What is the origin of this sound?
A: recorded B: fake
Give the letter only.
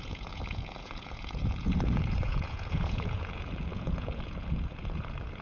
B